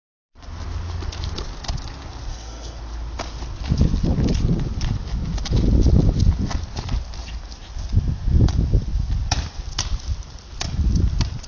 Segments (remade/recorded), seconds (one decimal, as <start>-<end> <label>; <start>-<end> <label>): 0.0-2.3 recorded; 2.3-2.8 remade; 2.8-11.5 recorded